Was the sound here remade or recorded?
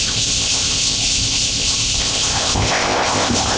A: remade